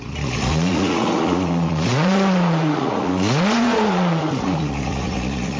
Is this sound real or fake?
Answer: fake